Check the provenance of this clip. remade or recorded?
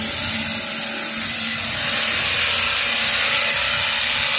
recorded